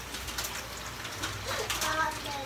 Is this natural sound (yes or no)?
yes